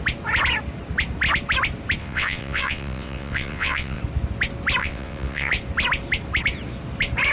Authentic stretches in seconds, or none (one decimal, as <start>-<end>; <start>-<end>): 0.0-2.0; 4.0-4.8; 5.5-7.3